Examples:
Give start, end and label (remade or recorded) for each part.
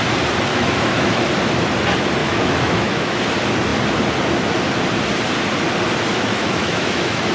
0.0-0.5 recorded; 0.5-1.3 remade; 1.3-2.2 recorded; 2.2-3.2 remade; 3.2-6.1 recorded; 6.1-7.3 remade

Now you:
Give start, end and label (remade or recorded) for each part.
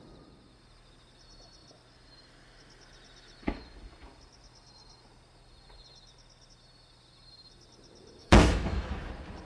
0.0-8.2 recorded; 8.2-9.1 remade; 9.1-9.5 recorded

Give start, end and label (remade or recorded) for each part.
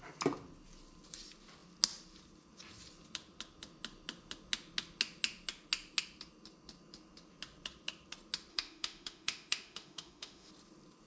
0.0-8.5 recorded; 8.5-10.5 remade; 10.5-11.1 recorded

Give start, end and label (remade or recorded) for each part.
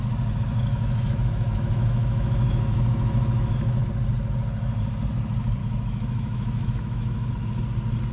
0.0-0.7 recorded; 0.7-3.8 remade; 3.8-5.6 recorded; 5.6-7.3 remade; 7.3-8.1 recorded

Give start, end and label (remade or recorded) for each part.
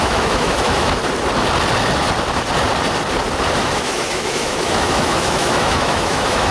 0.0-1.0 remade; 1.0-3.5 recorded; 3.5-6.5 remade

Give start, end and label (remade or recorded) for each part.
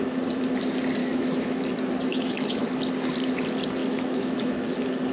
0.0-1.0 recorded; 1.0-1.6 remade; 1.6-2.1 recorded; 2.1-2.6 remade; 2.6-3.8 recorded; 3.8-4.6 remade; 4.6-5.1 recorded